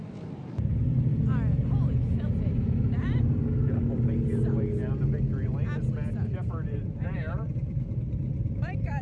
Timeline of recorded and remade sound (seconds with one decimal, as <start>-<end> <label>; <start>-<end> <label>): 0.0-1.1 remade; 1.1-2.6 recorded; 2.6-3.4 remade; 3.4-6.5 recorded; 6.5-9.0 remade